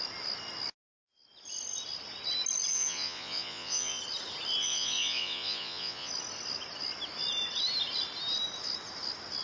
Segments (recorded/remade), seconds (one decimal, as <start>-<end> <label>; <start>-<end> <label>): 0.0-2.7 recorded; 2.7-4.0 remade; 4.0-4.6 recorded; 4.6-6.1 remade; 6.1-9.4 recorded